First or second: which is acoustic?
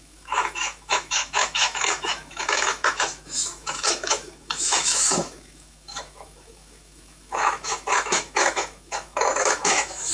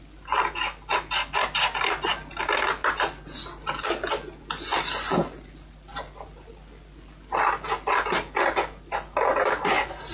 second